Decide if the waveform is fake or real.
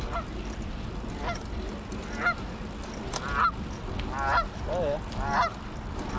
real